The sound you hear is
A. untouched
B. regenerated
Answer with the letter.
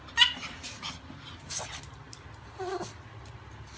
A